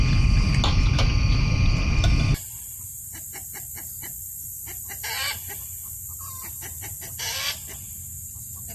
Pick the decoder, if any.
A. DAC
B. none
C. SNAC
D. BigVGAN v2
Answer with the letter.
B